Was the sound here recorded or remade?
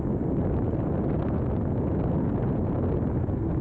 recorded